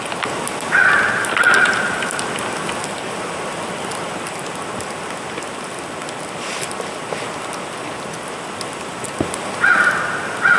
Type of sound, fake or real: real